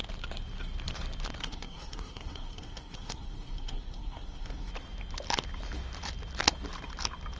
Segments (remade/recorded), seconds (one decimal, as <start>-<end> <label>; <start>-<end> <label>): 0.0-1.4 recorded; 1.4-4.7 remade; 4.7-7.4 recorded